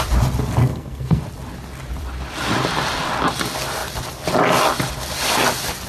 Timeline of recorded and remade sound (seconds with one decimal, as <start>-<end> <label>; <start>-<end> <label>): 0.0-0.6 recorded; 0.6-1.2 remade; 1.2-5.9 recorded